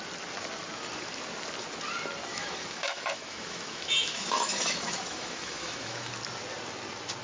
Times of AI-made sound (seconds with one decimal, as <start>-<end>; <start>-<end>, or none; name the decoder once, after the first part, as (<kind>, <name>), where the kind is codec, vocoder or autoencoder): 2.3-6.1 (autoencoder, DAC-VAE)